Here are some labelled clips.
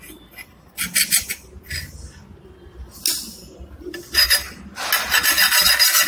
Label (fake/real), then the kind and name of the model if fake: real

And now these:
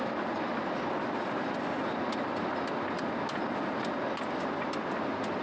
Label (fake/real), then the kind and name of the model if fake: real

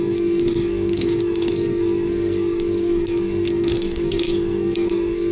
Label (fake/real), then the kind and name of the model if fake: fake, codec, SNAC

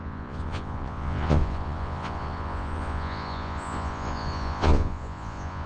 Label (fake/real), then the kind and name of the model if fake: fake, vocoder, Vocos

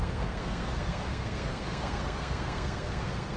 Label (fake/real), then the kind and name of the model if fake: fake, codec, SNAC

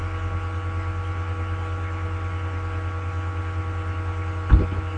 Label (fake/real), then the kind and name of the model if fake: real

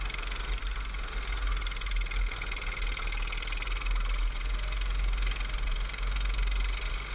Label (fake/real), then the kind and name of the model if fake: real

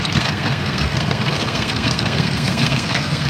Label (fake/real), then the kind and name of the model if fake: fake, codec, SNAC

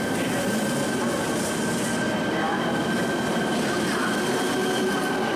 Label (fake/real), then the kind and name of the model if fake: real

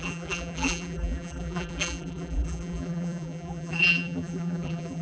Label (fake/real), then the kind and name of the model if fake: fake, vocoder, BigVGAN v2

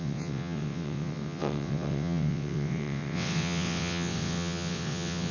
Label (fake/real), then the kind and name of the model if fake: fake, vocoder, WaveNeXt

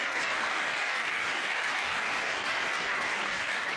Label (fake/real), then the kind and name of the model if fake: fake, codec, DAC